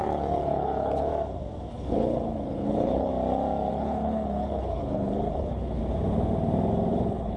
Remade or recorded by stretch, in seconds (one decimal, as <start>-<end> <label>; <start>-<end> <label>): 0.0-1.1 remade; 1.1-1.7 recorded; 1.7-3.1 remade; 3.1-3.7 recorded; 3.7-5.8 remade; 5.8-6.9 recorded; 6.9-7.4 remade